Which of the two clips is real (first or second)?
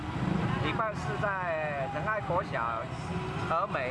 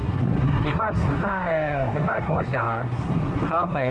first